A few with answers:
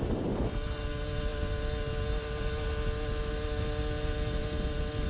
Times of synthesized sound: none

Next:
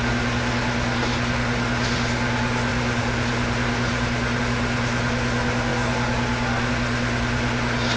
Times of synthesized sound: none

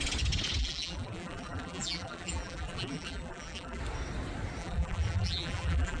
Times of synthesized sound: 0.6-3.8 (vocoder, BigVGAN v2); 4.6-6.0